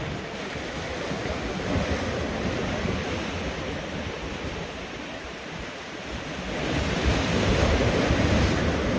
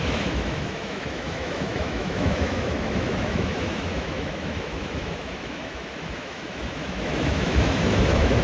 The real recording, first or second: first